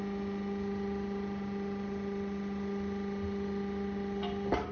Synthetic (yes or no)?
no